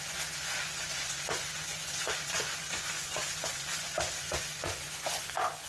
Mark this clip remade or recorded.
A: remade